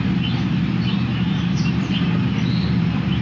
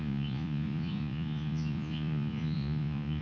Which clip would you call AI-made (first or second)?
second